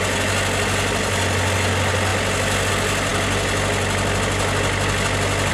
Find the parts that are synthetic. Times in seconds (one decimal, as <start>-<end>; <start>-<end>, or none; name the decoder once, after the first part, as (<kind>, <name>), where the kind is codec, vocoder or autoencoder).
none